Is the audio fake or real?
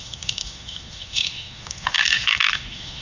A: fake